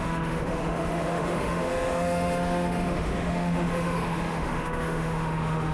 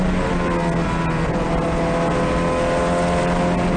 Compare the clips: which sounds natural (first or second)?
second